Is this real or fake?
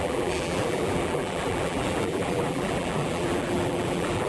fake